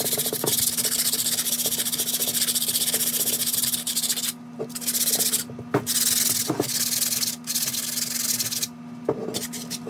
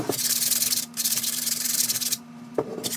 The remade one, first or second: second